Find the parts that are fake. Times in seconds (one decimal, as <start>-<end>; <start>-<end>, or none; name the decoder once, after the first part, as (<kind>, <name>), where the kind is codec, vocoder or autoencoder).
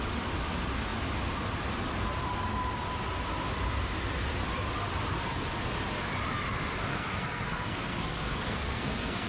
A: 6.9-9.3 (codec, SNAC)